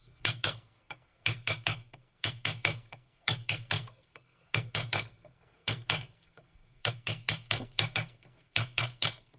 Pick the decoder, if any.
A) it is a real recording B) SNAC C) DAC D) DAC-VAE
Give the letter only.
B